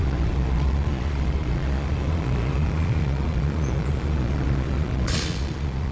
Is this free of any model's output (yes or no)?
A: no